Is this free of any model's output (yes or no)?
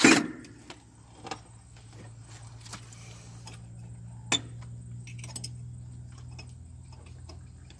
yes